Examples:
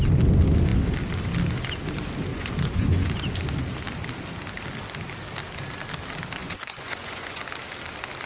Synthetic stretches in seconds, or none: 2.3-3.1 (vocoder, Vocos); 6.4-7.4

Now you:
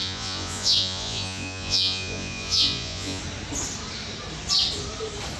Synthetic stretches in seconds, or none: 0.0-3.2 (vocoder, Vocos)

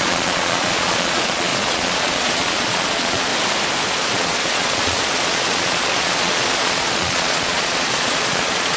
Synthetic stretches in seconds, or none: 0.0-3.3 (vocoder, Vocos); 3.9-8.8

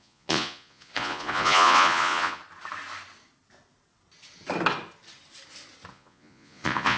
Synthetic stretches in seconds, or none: 0.0-2.4 (vocoder, Vocos); 5.9-7.0

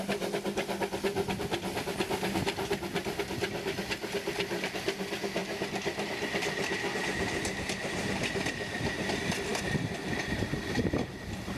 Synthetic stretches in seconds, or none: none